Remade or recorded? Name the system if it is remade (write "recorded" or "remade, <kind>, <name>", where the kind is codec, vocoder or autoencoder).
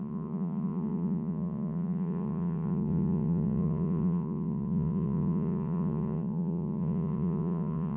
remade, vocoder, Vocos